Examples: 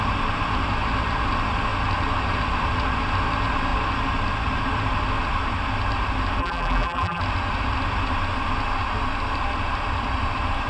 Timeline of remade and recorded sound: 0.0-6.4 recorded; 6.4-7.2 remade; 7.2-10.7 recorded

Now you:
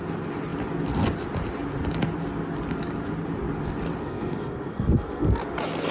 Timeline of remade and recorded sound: 0.0-4.0 recorded; 4.0-5.4 remade; 5.4-5.9 recorded

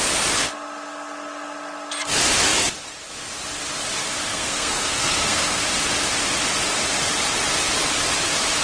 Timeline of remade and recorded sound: 0.0-4.3 recorded; 4.3-5.7 remade; 5.7-8.6 recorded